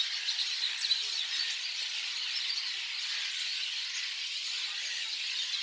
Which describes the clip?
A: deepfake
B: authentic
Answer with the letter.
B